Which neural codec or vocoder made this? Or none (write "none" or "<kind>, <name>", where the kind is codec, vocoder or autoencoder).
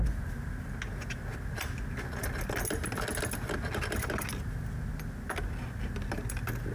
none